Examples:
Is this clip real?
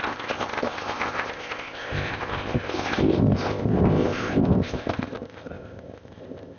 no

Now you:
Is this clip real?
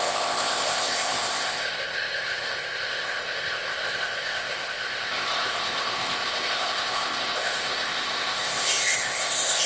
no